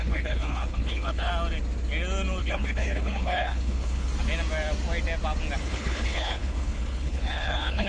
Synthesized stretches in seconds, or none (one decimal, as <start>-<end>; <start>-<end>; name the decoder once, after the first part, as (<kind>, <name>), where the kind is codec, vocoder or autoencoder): 0.0-1.3 (codec, HILCodec); 2.4-4.1; 5.6-7.9